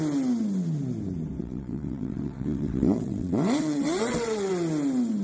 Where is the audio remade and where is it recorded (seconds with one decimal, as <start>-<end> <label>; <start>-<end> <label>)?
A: 0.0-1.4 recorded; 1.4-4.5 remade; 4.5-5.2 recorded